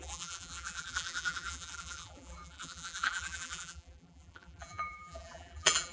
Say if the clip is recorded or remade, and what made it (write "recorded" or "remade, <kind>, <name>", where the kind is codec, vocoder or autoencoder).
remade, vocoder, BigVGAN v2